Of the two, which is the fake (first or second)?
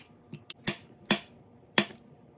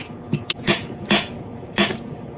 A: second